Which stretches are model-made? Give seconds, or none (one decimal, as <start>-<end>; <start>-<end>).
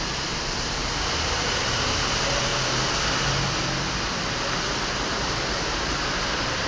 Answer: 0.0-2.5; 5.6-6.7